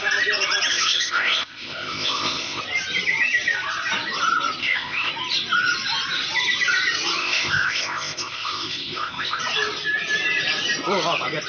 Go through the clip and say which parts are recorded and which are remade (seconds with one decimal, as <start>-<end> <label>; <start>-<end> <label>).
0.0-0.7 recorded; 0.7-2.6 remade; 2.6-4.6 recorded; 4.6-5.1 remade; 5.1-7.2 recorded; 7.2-9.4 remade; 9.4-11.5 recorded